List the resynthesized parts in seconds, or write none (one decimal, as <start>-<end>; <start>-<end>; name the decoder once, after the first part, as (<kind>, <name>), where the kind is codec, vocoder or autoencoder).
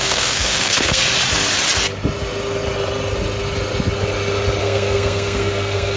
0.0-1.0 (codec, SNAC); 4.6-6.0